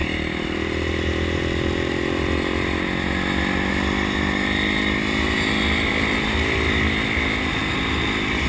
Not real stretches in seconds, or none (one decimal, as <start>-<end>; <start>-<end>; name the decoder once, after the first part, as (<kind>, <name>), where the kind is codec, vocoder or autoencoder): none